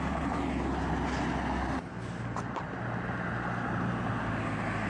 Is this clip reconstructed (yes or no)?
no